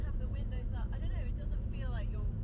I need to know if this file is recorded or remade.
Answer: remade